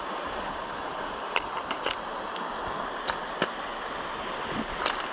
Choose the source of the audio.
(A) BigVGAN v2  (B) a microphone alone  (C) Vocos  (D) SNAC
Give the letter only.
B